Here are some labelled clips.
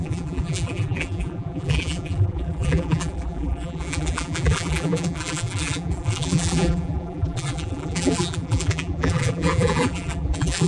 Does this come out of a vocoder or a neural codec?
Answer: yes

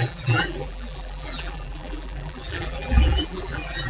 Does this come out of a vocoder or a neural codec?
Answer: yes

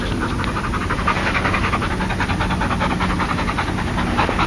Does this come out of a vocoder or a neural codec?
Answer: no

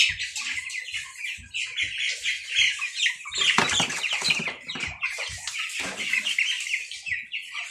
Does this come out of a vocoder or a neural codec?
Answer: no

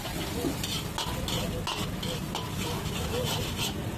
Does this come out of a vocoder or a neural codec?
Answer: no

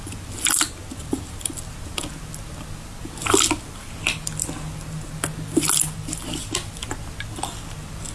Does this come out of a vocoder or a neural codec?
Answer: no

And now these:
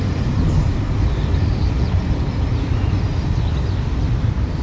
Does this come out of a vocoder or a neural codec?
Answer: no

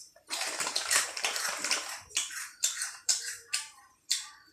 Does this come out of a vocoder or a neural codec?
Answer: yes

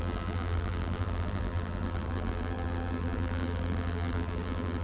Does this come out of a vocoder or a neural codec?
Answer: yes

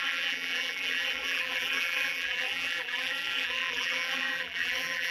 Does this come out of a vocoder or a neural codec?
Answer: yes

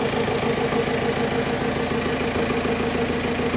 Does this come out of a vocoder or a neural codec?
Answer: no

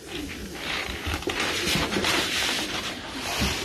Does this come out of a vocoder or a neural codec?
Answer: yes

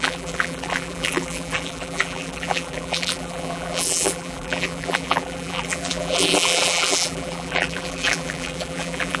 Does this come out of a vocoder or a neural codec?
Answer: yes